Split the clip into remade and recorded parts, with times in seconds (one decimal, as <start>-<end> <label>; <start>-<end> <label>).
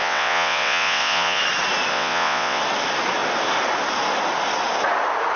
0.0-1.4 remade; 1.4-1.9 recorded; 1.9-2.6 remade; 2.6-5.4 recorded